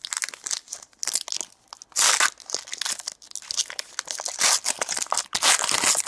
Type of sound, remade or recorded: recorded